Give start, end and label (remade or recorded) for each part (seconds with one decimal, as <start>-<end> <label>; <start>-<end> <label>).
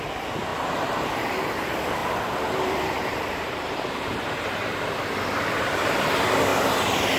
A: 0.0-0.5 recorded; 0.5-1.1 remade; 1.1-2.0 recorded; 2.0-4.8 remade; 4.8-7.2 recorded